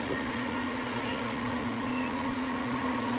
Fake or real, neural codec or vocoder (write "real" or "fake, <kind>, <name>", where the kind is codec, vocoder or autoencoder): fake, vocoder, Vocos